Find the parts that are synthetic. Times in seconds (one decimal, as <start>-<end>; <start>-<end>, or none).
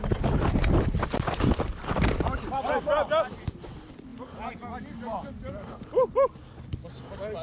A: none